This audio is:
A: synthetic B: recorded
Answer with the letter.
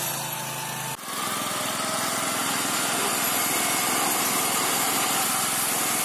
B